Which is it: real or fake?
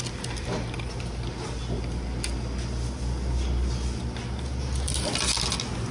real